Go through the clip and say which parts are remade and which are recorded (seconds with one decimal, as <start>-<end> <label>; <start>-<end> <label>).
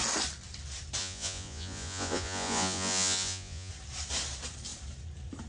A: 0.0-1.0 recorded; 1.0-3.7 remade; 3.7-5.5 recorded